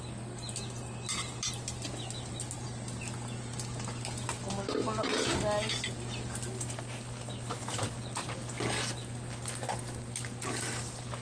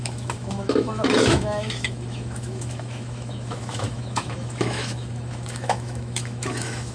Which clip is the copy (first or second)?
second